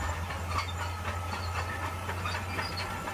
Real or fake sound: real